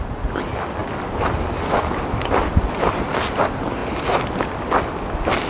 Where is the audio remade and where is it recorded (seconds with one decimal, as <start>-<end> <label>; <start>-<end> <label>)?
0.0-5.5 recorded